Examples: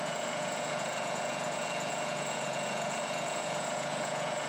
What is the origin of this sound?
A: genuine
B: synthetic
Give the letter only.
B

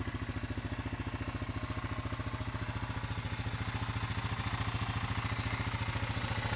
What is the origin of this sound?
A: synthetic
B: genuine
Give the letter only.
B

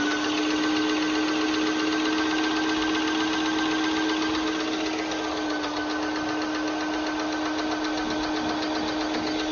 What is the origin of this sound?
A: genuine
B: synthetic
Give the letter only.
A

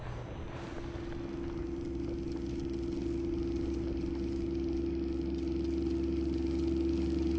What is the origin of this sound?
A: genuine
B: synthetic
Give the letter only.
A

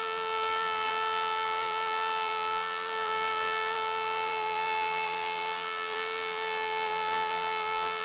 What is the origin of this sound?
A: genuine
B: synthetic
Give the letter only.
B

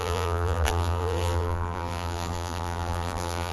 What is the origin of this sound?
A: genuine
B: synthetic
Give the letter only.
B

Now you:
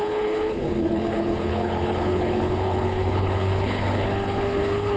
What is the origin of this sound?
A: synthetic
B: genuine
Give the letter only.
A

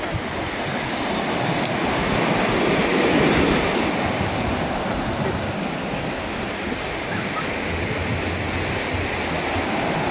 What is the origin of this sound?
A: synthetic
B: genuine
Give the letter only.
B